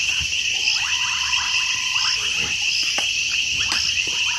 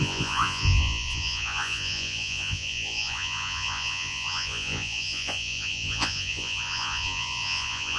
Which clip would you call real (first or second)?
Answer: first